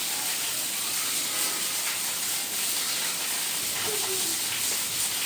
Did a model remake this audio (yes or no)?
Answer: no